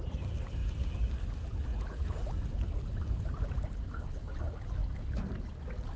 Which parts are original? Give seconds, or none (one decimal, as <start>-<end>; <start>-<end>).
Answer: 0.0-1.7; 2.4-6.0